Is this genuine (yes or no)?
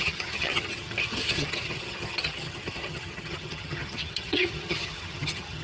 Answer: no